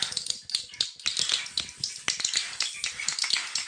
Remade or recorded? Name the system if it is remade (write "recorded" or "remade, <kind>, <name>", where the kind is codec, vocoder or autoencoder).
recorded